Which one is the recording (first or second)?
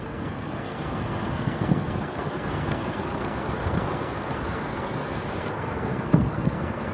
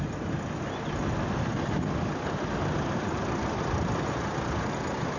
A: second